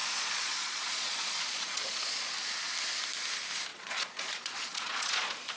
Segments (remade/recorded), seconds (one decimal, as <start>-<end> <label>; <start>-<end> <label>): 0.0-2.0 remade; 2.0-3.7 recorded; 3.7-5.6 remade